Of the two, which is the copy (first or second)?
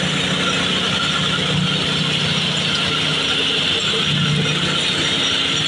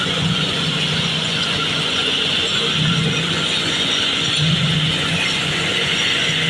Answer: second